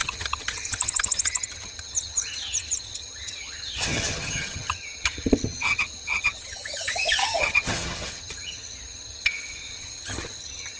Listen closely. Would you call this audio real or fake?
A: fake